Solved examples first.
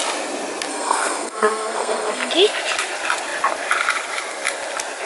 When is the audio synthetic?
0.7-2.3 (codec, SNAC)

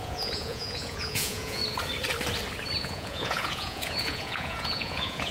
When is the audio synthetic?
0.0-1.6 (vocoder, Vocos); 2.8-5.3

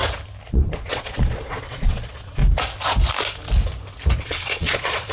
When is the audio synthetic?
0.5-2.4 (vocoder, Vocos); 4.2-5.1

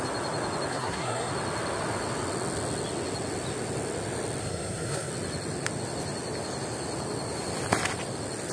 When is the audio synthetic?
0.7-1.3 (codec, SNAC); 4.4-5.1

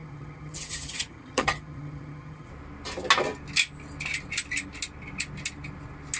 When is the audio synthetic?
0.0-2.5 (vocoder, HiFi-GAN)

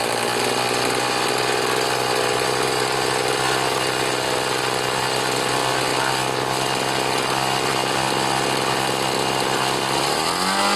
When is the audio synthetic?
none

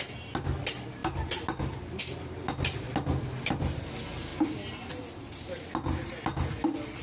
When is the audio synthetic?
none

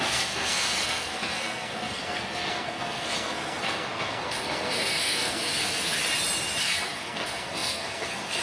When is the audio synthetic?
0.0-6.0 (codec, SNAC); 6.6-8.4